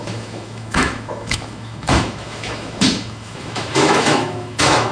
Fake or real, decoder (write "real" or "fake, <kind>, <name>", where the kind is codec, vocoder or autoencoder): fake, autoencoder, DAC-VAE